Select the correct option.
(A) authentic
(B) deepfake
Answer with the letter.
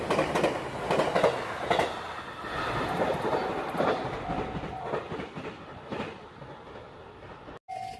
A